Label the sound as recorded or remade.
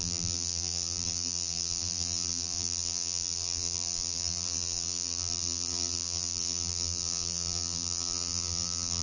remade